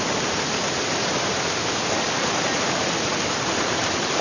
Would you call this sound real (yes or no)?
yes